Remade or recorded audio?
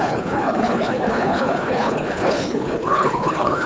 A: remade